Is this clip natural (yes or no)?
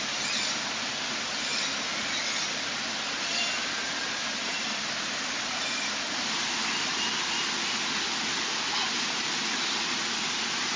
yes